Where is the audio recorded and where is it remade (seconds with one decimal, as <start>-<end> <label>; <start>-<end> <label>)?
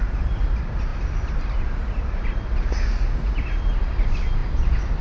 0.0-5.0 recorded